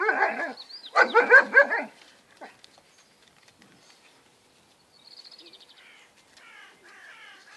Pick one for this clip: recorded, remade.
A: recorded